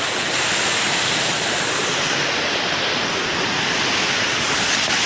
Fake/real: real